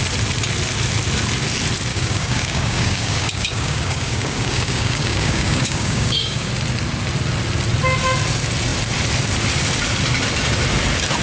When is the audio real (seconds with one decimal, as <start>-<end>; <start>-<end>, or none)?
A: 0.0-1.9; 6.5-11.2